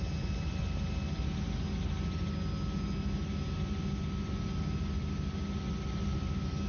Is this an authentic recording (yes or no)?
yes